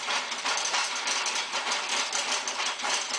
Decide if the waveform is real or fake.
fake